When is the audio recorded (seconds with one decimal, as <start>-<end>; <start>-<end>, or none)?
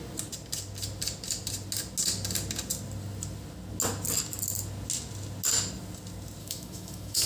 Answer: 0.0-6.4